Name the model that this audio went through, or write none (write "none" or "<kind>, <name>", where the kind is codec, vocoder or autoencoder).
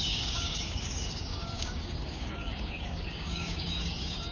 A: codec, DAC